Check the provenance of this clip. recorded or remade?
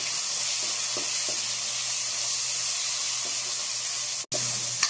recorded